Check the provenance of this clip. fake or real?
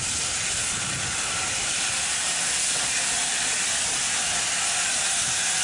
fake